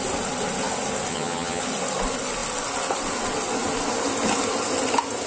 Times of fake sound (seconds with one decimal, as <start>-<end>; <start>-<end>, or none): 1.1-1.6